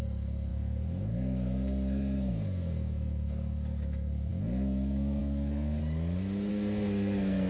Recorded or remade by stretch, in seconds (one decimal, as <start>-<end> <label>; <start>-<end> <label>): 0.0-5.8 remade; 5.8-6.5 recorded; 6.5-7.5 remade